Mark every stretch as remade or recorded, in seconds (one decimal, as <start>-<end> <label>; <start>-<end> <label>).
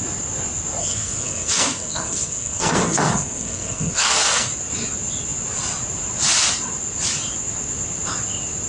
0.0-0.8 recorded; 0.8-4.5 remade; 4.5-8.7 recorded